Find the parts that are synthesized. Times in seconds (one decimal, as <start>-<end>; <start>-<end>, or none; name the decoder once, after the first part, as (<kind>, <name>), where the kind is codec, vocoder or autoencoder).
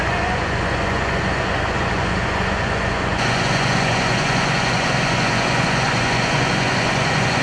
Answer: 0.0-7.4 (vocoder, Vocos)